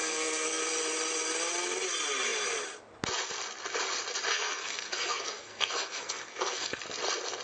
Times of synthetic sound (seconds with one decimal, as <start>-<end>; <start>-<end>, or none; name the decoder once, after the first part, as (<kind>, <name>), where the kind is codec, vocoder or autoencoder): 0.0-0.6 (codec, SNAC); 4.3-6.8